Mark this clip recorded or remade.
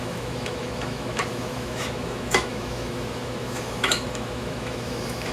remade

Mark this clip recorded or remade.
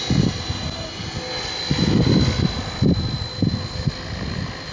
recorded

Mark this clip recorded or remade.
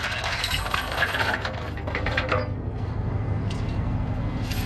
remade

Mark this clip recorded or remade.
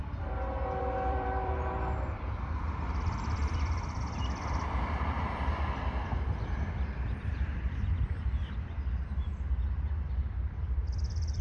remade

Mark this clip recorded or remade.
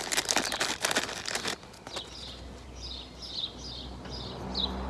recorded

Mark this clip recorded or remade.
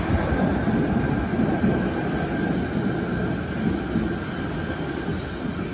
recorded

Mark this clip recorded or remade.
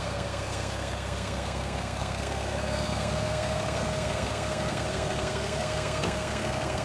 remade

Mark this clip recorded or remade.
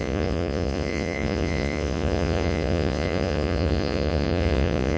remade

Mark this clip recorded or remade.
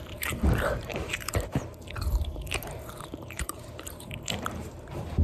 remade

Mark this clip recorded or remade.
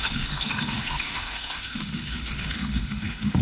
remade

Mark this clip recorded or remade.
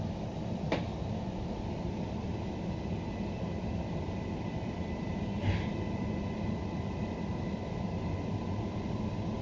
recorded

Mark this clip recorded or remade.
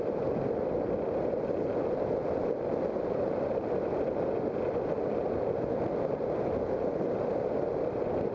recorded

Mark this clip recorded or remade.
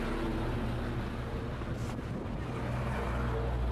recorded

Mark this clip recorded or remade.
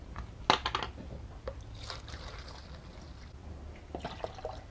recorded